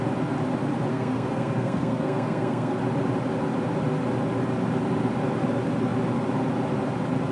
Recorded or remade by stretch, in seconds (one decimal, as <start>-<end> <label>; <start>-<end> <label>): 0.0-0.9 recorded; 0.9-2.8 remade; 2.8-7.3 recorded